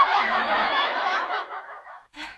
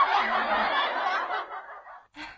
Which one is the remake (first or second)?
first